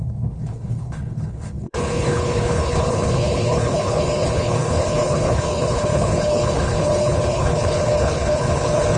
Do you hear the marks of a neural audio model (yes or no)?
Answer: yes